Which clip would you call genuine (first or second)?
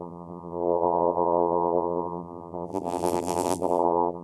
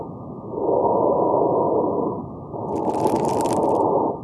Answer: second